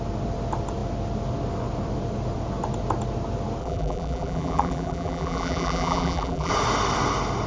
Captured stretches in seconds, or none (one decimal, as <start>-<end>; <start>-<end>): 0.0-3.6; 6.5-7.5

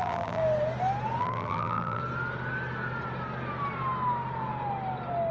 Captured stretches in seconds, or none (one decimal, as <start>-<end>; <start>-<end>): 0.4-1.2; 2.0-5.3